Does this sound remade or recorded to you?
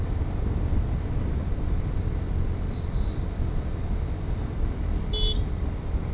recorded